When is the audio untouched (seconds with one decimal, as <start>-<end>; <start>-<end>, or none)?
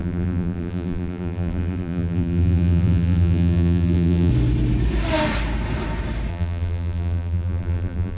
4.3-6.3